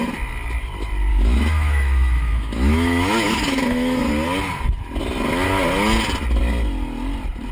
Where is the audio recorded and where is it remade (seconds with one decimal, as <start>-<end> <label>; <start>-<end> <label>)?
0.0-1.1 recorded; 1.1-4.1 remade; 4.1-7.5 recorded

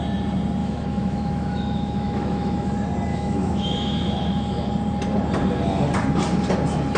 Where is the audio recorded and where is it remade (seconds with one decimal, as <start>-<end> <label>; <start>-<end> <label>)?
0.0-0.6 recorded; 0.6-2.7 remade; 2.7-3.1 recorded; 3.1-4.7 remade; 4.7-7.0 recorded